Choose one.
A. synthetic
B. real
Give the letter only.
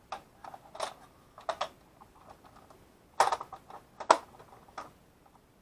B